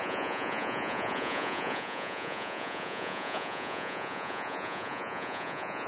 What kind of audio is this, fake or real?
fake